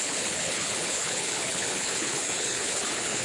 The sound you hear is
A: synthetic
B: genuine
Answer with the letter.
A